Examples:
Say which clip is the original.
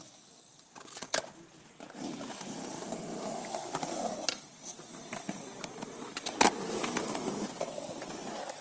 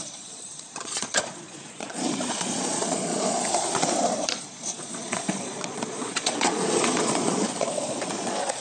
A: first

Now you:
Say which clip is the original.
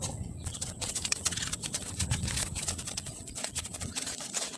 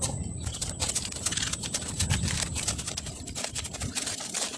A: second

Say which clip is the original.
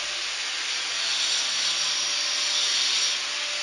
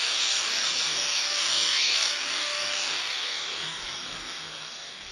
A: first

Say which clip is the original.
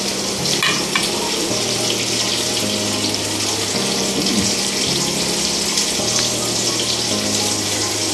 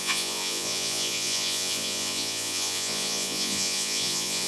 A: first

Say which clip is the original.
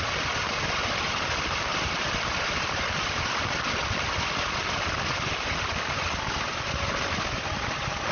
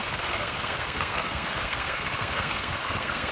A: first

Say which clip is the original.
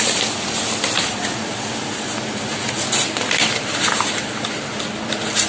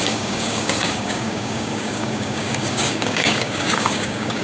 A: first